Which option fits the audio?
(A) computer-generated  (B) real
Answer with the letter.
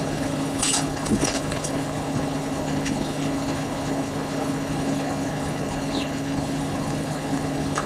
A